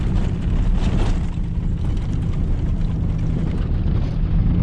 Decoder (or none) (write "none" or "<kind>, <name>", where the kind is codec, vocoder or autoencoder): none